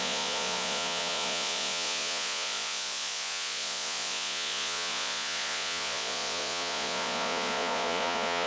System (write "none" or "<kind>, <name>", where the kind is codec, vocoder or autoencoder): vocoder, Vocos